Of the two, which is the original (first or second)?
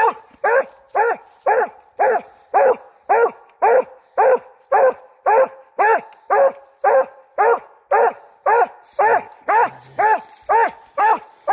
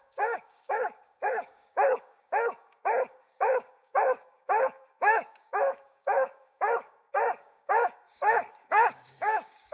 first